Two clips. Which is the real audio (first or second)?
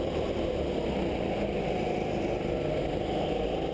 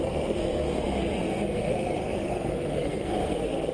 first